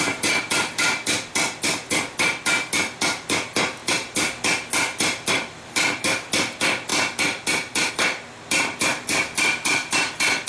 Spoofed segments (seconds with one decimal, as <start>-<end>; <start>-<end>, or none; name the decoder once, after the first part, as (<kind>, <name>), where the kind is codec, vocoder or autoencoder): none